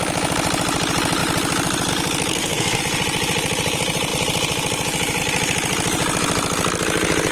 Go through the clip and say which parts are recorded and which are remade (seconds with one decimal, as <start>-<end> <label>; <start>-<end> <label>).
0.0-2.3 recorded; 2.3-2.8 remade; 2.8-7.3 recorded